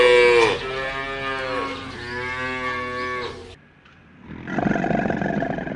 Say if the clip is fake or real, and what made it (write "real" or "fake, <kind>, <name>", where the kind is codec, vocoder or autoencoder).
real